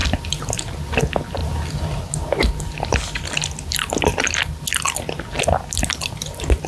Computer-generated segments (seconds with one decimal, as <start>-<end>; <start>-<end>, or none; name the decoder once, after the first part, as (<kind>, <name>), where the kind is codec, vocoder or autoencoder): none